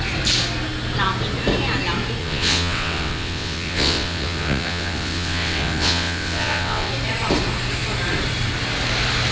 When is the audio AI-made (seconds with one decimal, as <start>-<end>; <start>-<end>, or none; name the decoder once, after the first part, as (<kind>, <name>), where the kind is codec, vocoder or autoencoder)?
2.2-6.9 (vocoder, WaveNeXt)